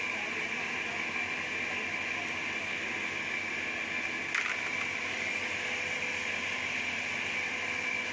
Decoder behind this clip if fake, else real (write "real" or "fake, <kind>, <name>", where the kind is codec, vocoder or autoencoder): real